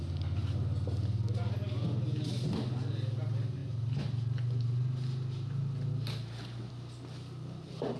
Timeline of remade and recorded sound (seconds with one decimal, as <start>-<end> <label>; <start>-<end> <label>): 0.0-8.0 recorded